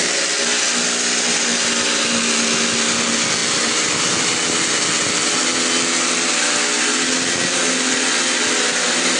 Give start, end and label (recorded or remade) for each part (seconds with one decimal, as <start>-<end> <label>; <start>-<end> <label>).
0.0-9.2 recorded